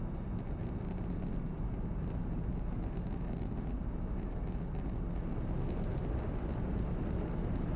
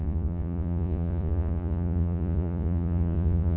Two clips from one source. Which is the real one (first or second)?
first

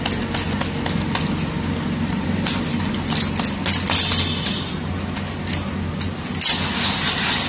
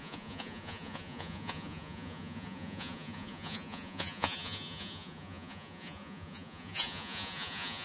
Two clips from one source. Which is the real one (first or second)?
first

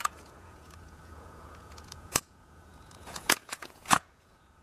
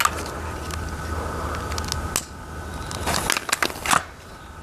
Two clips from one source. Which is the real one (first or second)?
second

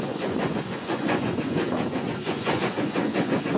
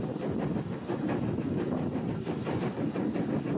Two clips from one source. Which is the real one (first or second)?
second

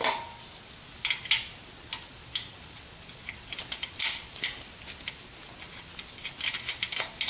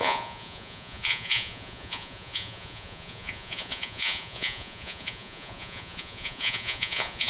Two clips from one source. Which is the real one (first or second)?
first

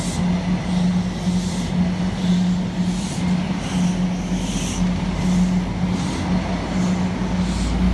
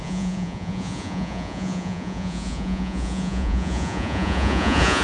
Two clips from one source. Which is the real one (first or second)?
first